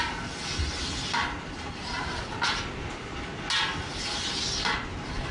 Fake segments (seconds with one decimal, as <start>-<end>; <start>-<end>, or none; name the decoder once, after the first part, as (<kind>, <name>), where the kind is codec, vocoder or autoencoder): none